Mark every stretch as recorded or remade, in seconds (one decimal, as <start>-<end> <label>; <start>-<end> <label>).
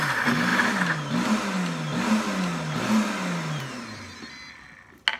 0.0-5.2 recorded